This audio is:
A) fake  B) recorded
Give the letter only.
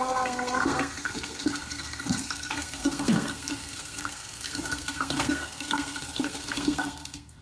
A